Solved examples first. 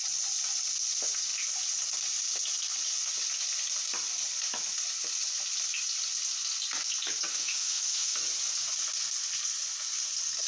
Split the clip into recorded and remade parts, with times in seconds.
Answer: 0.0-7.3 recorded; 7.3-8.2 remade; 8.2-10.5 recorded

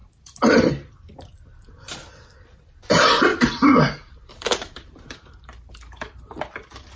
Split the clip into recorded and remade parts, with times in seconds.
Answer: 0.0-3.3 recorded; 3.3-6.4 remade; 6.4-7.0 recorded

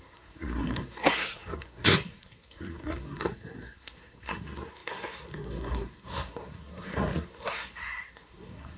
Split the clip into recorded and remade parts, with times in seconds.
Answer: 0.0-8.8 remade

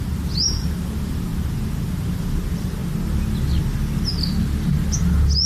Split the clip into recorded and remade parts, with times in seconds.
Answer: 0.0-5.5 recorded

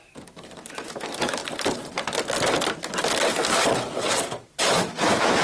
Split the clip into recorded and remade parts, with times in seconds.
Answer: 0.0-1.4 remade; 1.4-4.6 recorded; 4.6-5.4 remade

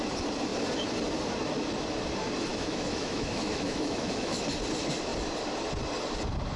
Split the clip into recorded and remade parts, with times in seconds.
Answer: 0.0-2.5 recorded; 2.5-4.4 remade; 4.4-6.6 recorded

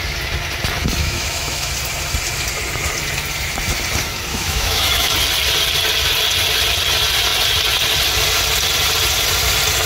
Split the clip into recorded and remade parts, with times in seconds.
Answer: 0.0-1.0 recorded; 1.0-1.7 remade; 1.7-4.3 recorded; 4.3-5.1 remade; 5.1-9.9 recorded